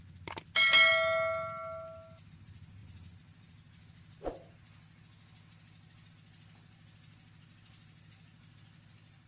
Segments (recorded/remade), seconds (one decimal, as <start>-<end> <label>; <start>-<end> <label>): 0.0-9.3 recorded